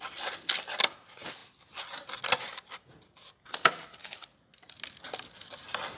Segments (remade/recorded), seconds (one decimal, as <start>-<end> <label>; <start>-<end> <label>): 0.0-6.0 recorded